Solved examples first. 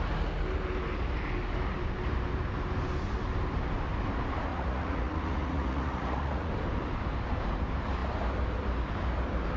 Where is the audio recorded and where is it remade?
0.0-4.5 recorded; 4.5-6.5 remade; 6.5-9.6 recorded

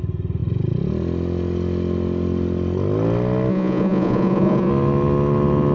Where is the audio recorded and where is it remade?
0.0-3.5 recorded; 3.5-4.7 remade; 4.7-5.7 recorded

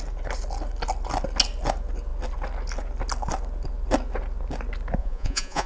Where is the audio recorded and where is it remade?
0.0-5.0 recorded; 5.0-5.7 remade

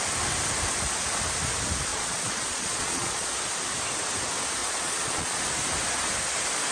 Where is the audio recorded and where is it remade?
0.0-1.9 recorded; 1.9-3.3 remade; 3.3-4.6 recorded; 4.6-5.4 remade; 5.4-6.7 recorded

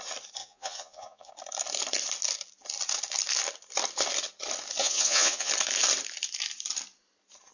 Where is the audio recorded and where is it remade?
0.0-0.4 recorded; 0.4-1.3 remade; 1.3-4.8 recorded; 4.8-5.5 remade; 5.5-7.5 recorded

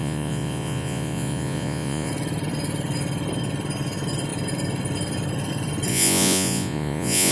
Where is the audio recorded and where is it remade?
0.0-2.1 remade; 2.1-5.9 recorded; 5.9-7.3 remade

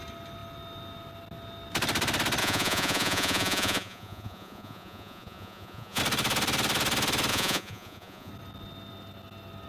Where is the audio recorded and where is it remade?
0.0-2.4 recorded; 2.4-6.0 remade; 6.0-7.3 recorded; 7.3-8.3 remade; 8.3-9.7 recorded

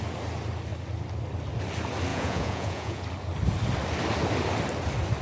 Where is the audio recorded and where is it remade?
0.0-2.1 recorded; 2.1-3.0 remade; 3.0-5.2 recorded